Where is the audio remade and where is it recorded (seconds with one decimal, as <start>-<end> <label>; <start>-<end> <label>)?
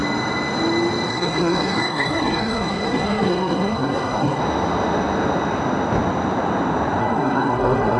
0.0-1.1 recorded; 1.1-4.4 remade; 4.4-7.0 recorded; 7.0-8.0 remade